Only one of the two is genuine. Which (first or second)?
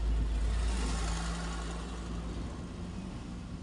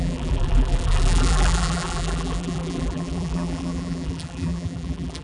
first